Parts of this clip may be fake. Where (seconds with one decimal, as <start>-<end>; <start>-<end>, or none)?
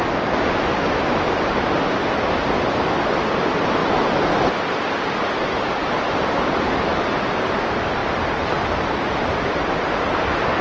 0.0-2.0; 3.1-3.8; 5.3-10.6